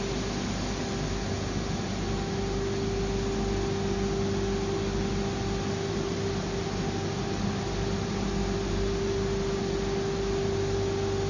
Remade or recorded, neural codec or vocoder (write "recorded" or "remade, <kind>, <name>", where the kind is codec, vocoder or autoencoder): recorded